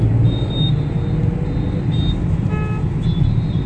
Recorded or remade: recorded